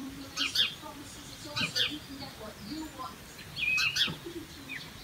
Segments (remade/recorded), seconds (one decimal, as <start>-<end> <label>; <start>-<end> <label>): 0.0-2.1 remade; 2.1-4.4 recorded; 4.4-5.0 remade